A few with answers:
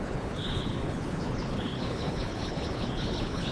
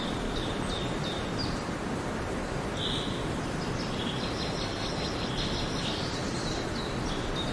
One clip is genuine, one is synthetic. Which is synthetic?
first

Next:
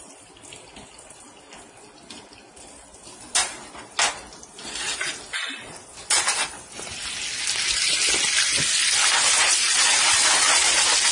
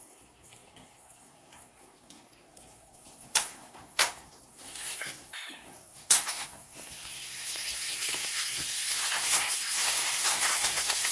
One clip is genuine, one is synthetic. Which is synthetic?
second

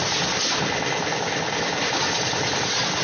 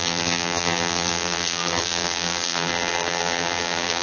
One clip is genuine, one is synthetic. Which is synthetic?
second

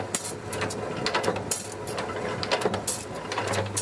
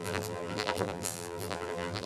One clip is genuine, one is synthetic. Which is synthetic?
second